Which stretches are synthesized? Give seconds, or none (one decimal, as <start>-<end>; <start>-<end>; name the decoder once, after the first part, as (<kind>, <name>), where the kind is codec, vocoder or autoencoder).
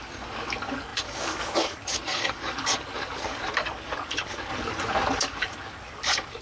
0.0-4.5 (codec, DAC); 5.2-6.4